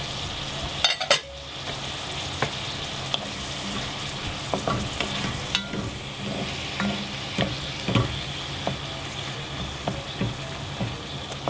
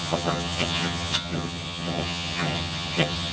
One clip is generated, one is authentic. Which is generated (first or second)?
second